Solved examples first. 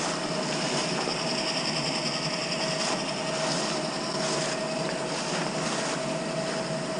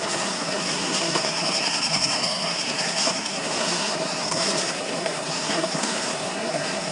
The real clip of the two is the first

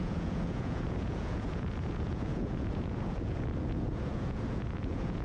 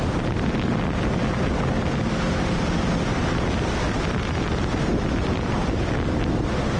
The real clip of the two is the second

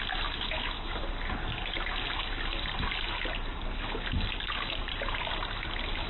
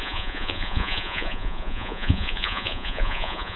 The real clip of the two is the first